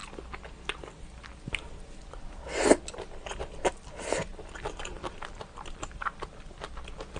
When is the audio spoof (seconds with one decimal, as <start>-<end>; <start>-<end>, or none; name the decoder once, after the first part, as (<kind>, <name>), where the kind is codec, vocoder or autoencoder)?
4.3-6.8 (vocoder, BigVGAN v2)